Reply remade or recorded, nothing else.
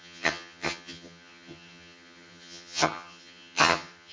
remade